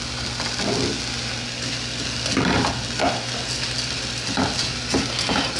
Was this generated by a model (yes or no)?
no